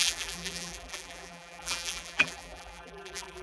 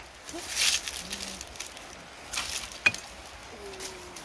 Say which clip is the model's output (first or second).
first